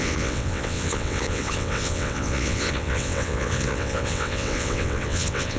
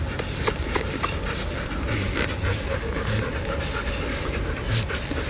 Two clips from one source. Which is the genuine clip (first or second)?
second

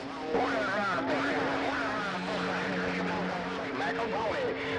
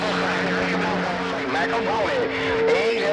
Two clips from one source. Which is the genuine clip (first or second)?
second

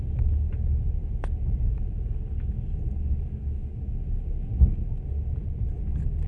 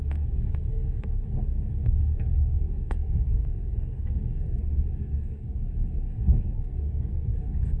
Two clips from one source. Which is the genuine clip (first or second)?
first